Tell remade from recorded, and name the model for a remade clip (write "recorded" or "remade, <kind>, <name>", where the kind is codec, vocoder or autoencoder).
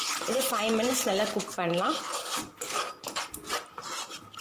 remade, vocoder, BigVGAN v2